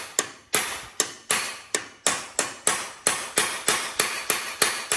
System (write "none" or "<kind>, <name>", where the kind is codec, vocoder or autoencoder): none